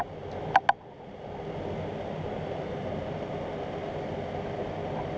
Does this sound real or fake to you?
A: real